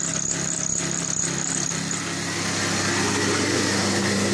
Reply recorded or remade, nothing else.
recorded